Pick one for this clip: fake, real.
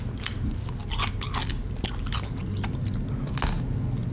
real